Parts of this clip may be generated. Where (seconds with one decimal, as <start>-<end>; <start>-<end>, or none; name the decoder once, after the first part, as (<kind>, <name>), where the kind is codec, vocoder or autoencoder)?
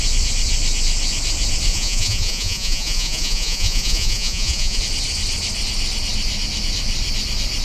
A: 1.7-4.8 (vocoder, Vocos)